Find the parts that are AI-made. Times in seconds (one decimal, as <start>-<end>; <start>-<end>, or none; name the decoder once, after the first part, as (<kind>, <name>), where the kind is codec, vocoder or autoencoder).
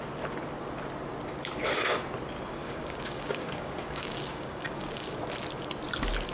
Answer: 2.6-5.2 (codec, DAC)